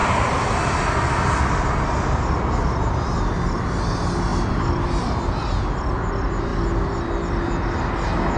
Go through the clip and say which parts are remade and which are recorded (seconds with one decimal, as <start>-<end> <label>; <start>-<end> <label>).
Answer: 0.0-8.4 recorded